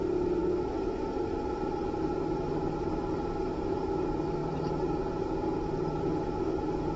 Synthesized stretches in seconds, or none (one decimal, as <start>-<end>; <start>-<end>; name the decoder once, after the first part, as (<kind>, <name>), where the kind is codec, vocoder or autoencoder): 0.4-1.3 (autoencoder, DAC-VAE)